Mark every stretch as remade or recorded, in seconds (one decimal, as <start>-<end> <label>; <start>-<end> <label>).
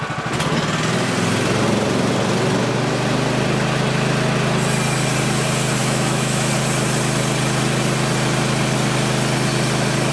0.0-5.8 recorded; 5.8-6.5 remade; 6.5-10.1 recorded